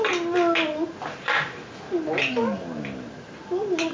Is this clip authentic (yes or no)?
yes